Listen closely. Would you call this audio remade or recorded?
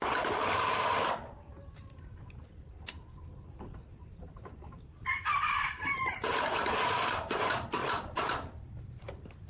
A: remade